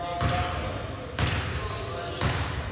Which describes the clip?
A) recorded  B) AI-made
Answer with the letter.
A